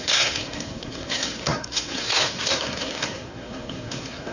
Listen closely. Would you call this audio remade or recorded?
remade